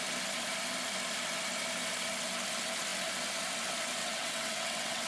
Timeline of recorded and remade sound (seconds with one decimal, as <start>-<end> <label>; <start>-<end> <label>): 0.0-4.0 recorded; 4.0-5.1 remade